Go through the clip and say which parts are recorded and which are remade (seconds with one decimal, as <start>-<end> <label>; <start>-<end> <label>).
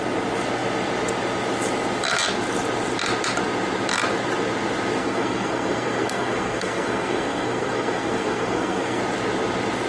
0.0-5.0 recorded; 5.0-9.0 remade; 9.0-9.9 recorded